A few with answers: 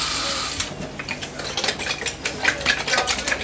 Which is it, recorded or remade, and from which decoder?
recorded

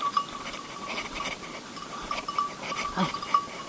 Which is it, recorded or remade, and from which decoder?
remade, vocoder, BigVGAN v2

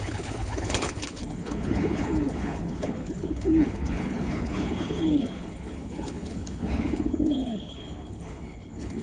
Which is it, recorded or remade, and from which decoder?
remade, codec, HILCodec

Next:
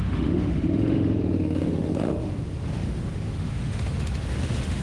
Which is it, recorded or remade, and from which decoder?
remade, autoencoder, DAC-VAE